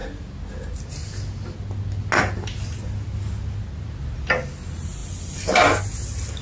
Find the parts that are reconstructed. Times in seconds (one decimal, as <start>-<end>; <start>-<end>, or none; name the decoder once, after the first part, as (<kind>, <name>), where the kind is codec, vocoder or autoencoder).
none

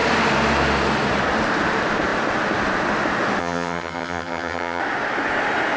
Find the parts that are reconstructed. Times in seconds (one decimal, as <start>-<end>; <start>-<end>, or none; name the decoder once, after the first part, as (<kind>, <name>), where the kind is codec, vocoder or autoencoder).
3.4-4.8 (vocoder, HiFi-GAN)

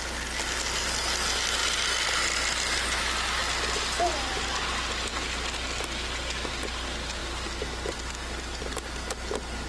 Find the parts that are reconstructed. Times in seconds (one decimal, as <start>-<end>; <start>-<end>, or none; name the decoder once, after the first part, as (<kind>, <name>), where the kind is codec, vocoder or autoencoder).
none

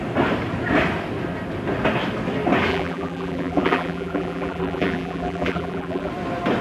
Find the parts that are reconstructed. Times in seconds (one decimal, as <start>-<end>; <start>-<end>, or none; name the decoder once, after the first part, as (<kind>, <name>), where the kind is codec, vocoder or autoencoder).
2.7-6.1 (vocoder, BigVGAN v2)

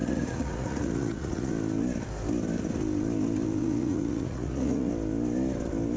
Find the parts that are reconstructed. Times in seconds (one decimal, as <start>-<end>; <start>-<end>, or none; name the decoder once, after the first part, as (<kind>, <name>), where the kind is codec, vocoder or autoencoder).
0.0-1.5 (vocoder, Vocos); 3.6-4.9